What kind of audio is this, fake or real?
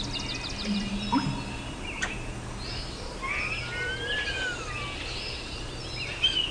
real